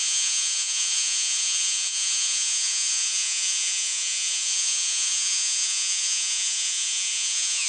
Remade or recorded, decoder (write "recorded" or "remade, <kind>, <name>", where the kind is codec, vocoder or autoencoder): remade, vocoder, Vocos